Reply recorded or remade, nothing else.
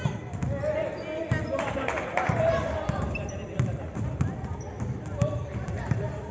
recorded